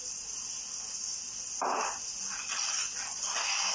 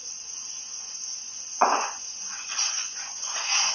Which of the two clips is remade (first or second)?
second